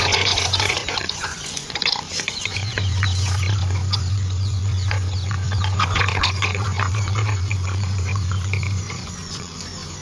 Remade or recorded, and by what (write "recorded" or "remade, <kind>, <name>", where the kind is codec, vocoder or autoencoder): remade, vocoder, Vocos